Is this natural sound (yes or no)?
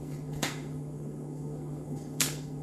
no